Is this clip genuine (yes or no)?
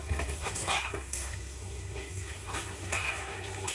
no